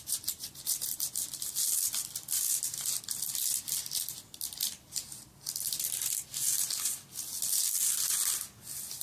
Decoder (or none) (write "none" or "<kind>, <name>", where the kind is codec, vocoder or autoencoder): none